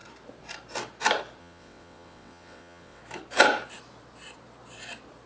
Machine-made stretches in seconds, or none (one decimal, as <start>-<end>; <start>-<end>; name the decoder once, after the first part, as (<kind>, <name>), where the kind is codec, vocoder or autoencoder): 1.4-3.0 (vocoder, WaveNeXt)